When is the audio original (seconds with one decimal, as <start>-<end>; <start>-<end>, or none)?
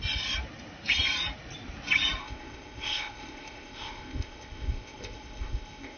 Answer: 0.0-2.2